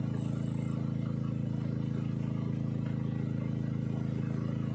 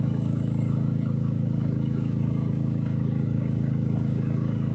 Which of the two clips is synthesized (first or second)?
second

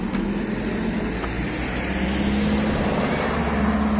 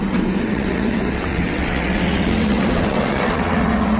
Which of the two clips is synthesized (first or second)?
second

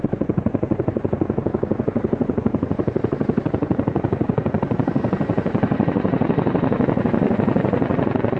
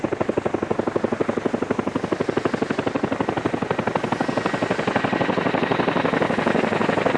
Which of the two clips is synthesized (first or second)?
first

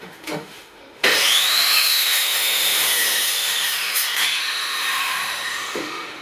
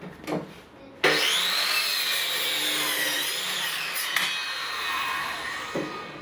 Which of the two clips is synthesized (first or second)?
first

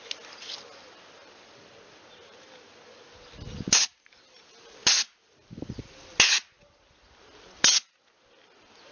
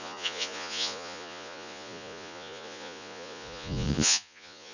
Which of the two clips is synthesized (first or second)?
second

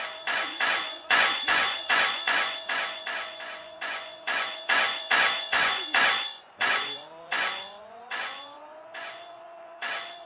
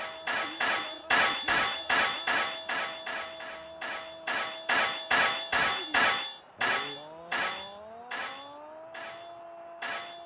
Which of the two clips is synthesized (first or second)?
first